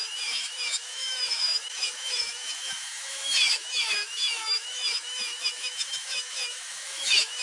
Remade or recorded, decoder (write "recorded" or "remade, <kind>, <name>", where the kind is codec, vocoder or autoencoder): remade, autoencoder, DAC-VAE